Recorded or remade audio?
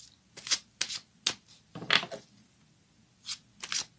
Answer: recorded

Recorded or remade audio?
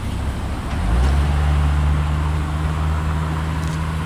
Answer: recorded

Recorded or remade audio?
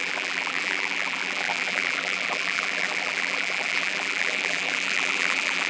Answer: remade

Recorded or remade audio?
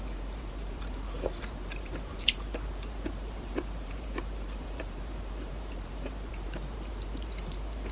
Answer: remade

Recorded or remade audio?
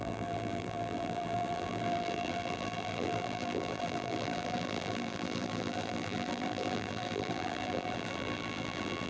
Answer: remade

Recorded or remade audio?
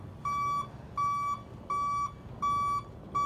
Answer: recorded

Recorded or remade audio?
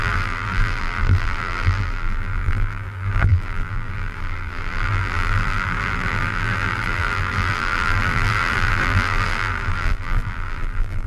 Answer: remade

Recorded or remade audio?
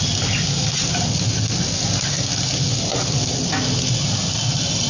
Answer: recorded